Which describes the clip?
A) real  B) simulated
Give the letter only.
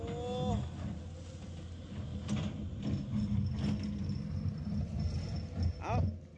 A